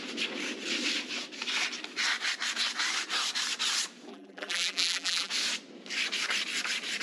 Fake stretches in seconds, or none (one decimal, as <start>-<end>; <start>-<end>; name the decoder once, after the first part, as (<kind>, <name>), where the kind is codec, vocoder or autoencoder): 4.1-5.3 (vocoder, BigVGAN v2)